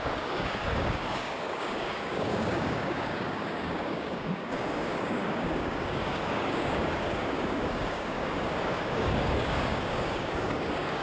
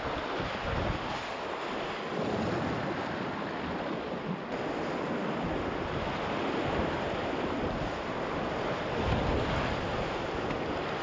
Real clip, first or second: second